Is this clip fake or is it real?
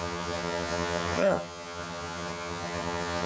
fake